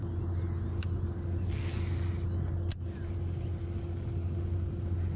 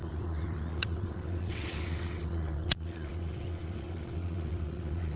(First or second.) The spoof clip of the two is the second